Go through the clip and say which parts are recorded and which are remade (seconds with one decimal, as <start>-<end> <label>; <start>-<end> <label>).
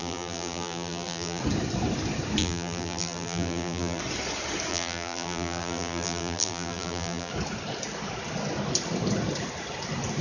0.0-1.4 remade; 1.4-2.4 recorded; 2.4-4.0 remade; 4.0-4.7 recorded; 4.7-7.3 remade; 7.3-10.2 recorded